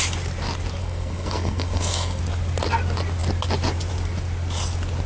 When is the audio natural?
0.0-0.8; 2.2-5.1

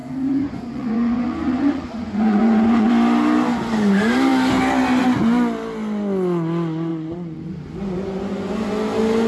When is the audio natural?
2.9-6.9; 7.4-9.3

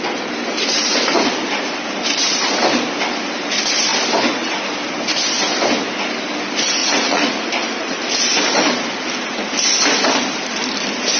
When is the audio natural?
0.0-6.8; 8.2-11.2

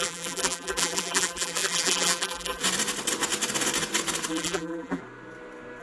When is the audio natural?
2.6-4.3; 5.0-5.8

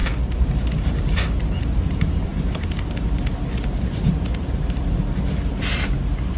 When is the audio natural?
0.0-1.6; 2.3-5.6

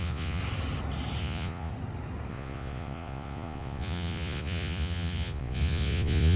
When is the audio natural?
0.4-1.2; 1.7-2.3

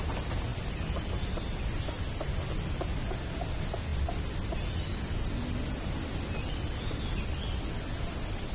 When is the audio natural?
0.0-8.5